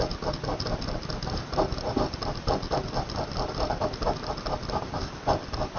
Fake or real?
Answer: real